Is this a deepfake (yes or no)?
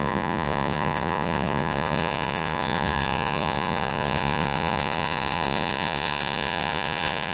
yes